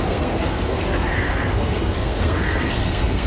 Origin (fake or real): fake